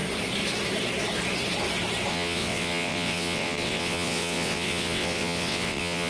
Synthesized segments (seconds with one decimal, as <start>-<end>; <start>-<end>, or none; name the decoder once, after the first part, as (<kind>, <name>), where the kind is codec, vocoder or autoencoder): 2.1-6.1 (vocoder, WaveNeXt)